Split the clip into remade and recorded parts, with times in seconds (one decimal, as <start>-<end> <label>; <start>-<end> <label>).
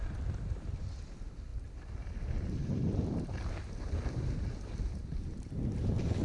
0.0-6.2 recorded